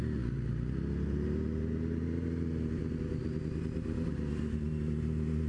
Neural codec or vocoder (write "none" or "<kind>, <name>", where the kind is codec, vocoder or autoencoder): none